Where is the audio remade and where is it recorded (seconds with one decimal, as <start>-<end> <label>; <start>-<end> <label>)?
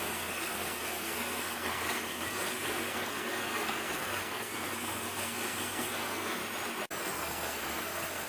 0.0-6.4 remade; 6.4-7.0 recorded; 7.0-8.3 remade